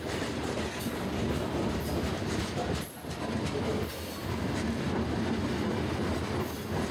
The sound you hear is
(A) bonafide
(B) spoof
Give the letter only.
A